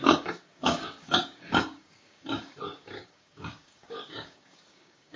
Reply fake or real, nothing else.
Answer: fake